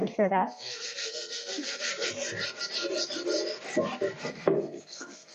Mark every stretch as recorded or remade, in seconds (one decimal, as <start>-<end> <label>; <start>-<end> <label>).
0.0-1.9 remade; 1.9-4.2 recorded; 4.2-5.3 remade